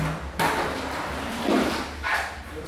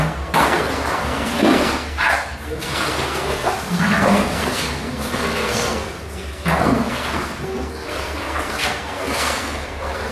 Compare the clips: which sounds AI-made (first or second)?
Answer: second